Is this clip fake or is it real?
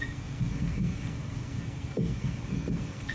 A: fake